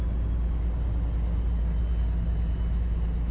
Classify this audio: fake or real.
real